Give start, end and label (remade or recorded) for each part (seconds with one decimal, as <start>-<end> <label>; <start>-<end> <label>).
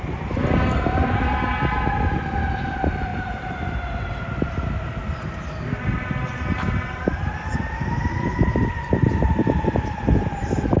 0.0-3.1 recorded; 3.1-4.2 remade; 4.2-10.8 recorded